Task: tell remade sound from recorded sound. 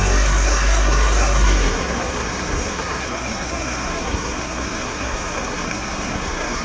remade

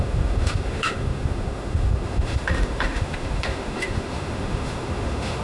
remade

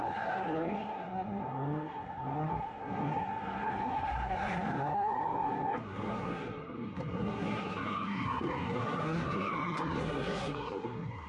remade